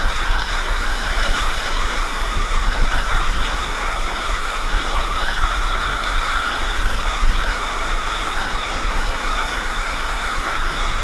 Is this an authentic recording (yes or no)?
no